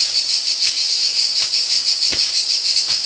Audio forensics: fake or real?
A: fake